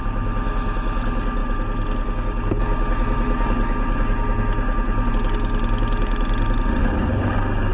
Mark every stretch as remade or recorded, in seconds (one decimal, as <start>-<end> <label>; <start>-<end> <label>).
0.0-6.8 recorded; 6.8-7.3 remade; 7.3-7.7 recorded